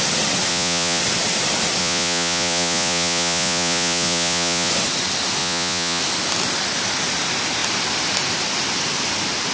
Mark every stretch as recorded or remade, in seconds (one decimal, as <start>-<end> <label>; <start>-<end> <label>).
0.0-0.5 recorded; 0.5-1.0 remade; 1.0-1.8 recorded; 1.8-4.7 remade; 4.7-5.4 recorded; 5.4-6.0 remade; 6.0-9.5 recorded